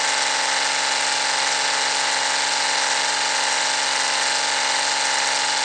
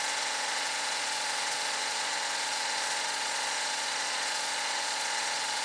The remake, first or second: second